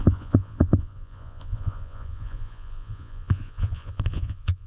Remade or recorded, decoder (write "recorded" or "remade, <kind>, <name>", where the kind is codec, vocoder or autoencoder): remade, vocoder, Vocos